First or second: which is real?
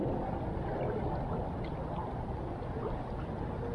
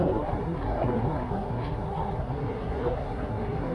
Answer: first